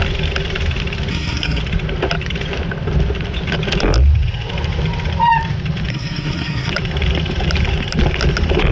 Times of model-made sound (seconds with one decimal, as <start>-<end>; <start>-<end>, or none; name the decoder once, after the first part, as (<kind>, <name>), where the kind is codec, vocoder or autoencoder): 1.1-1.6 (codec, SNAC); 5.9-6.7